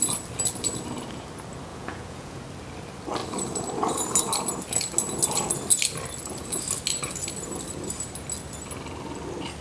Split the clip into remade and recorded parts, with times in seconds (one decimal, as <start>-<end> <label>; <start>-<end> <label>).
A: 0.0-1.7 recorded; 1.7-2.4 remade; 2.4-9.6 recorded

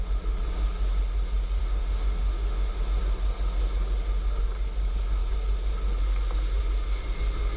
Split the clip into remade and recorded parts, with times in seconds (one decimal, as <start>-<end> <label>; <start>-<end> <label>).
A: 0.0-1.6 recorded; 1.6-3.0 remade; 3.0-7.6 recorded

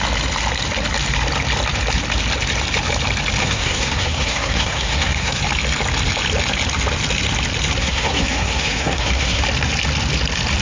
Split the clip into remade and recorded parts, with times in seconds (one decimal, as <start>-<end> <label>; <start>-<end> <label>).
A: 0.0-3.4 recorded; 3.4-5.4 remade; 5.4-7.8 recorded; 7.8-9.4 remade; 9.4-10.6 recorded

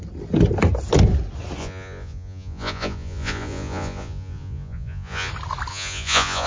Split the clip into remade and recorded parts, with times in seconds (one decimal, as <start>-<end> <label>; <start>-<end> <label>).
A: 0.0-1.6 recorded; 1.6-5.3 remade; 5.3-5.7 recorded; 5.7-6.5 remade

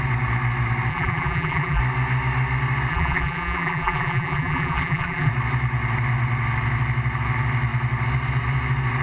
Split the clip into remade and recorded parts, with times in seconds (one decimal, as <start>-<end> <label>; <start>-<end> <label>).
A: 0.0-0.9 recorded; 0.9-1.8 remade; 1.8-2.9 recorded; 2.9-5.3 remade; 5.3-9.0 recorded

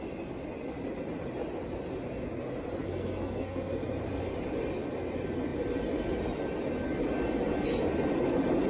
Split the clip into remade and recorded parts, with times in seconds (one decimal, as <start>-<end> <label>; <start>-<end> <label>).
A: 0.0-2.8 recorded; 2.8-3.9 remade; 3.9-8.7 recorded

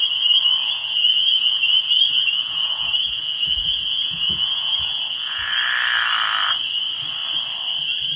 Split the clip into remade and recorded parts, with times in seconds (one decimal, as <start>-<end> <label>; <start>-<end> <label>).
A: 0.0-0.6 recorded; 0.6-5.5 remade; 5.5-8.2 recorded

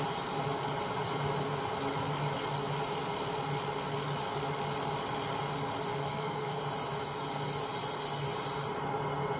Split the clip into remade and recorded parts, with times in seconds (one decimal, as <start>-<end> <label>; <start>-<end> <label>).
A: 0.0-5.9 recorded; 5.9-6.6 remade; 6.6-9.4 recorded